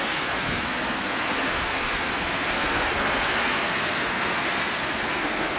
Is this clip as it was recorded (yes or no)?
no